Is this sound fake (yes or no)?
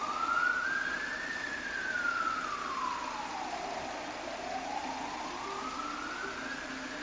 no